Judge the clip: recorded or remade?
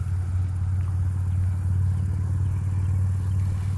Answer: recorded